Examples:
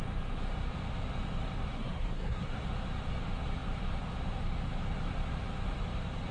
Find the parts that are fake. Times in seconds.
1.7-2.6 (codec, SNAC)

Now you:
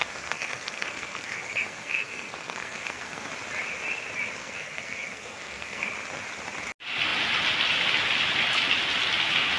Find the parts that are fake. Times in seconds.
0.0-3.3 (codec, SNAC); 4.4-5.9

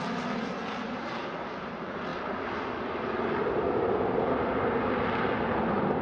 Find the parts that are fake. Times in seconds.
none

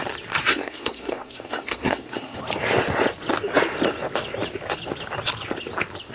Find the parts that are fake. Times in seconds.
0.4-2.4 (codec, SNAC)

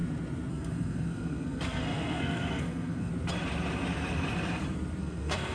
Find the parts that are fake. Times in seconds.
0.5-3.1 (codec, SNAC); 5.0-5.5

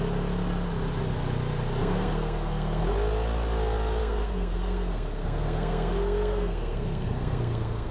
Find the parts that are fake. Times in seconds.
1.8-2.8 (codec, SNAC); 4.0-7.9

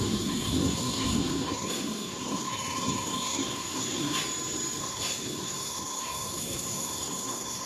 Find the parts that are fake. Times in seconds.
0.0-4.2 (codec, SNAC); 4.8-7.7

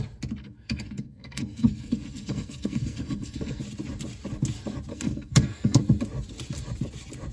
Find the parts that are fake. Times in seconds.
0.4-3.6 (codec, SNAC); 4.9-5.8